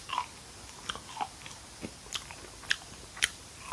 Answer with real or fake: real